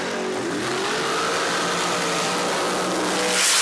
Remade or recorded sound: recorded